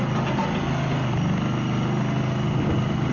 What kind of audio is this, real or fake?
real